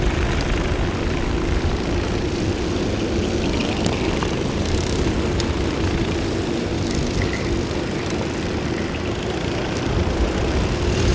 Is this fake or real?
real